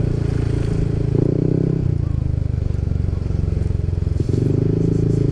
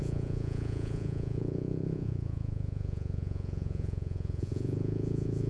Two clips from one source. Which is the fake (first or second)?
second